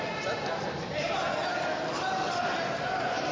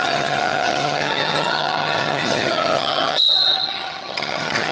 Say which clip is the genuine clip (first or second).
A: first